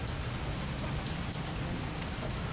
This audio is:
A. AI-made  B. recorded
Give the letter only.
B